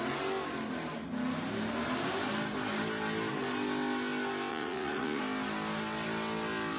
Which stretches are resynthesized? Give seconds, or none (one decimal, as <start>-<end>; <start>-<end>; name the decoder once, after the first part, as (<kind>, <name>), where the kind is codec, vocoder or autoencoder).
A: 4.5-5.2 (vocoder, Vocos)